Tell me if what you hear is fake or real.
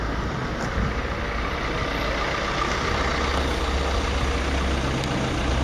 real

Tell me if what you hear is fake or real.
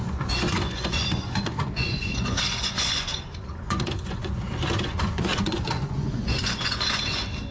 fake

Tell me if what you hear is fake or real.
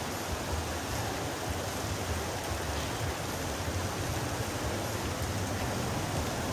real